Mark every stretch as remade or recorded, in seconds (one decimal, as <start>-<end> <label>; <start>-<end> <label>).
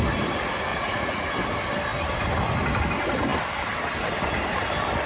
0.0-0.7 recorded; 0.7-1.3 remade; 1.3-5.1 recorded